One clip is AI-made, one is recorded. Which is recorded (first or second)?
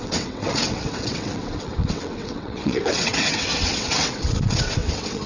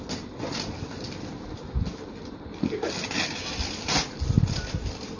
second